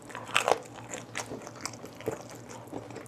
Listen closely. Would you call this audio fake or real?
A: real